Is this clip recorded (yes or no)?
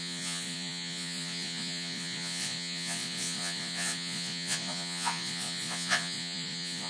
no